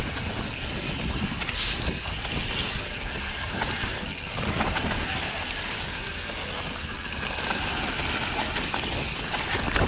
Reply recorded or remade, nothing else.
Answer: recorded